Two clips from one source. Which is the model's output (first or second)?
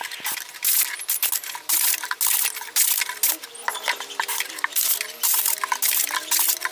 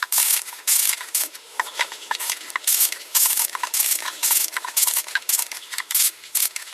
second